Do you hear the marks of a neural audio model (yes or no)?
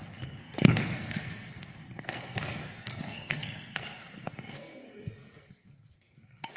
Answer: yes